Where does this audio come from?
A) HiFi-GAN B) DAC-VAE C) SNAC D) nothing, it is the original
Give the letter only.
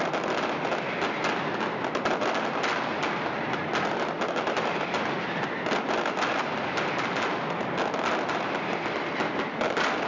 D